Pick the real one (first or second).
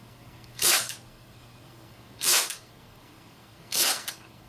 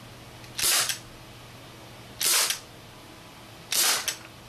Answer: second